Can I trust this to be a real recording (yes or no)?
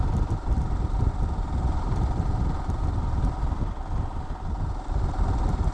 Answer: yes